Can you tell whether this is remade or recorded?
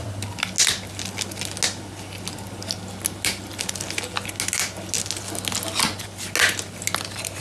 recorded